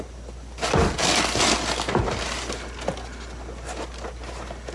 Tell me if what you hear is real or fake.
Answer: real